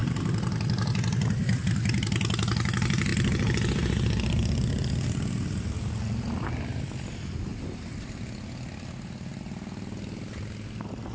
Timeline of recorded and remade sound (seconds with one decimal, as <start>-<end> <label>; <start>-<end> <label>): 0.0-11.1 recorded